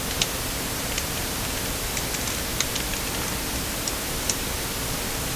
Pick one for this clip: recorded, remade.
recorded